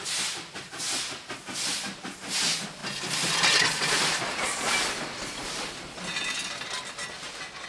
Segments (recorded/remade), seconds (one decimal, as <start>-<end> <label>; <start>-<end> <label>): 0.0-7.7 recorded